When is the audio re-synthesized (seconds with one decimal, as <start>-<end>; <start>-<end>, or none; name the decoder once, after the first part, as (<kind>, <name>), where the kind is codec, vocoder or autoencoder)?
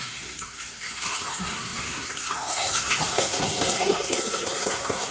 0.0-5.1 (codec, SNAC)